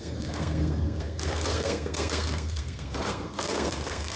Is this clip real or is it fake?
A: fake